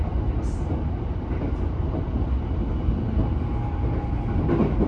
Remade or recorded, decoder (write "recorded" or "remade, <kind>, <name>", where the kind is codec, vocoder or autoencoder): recorded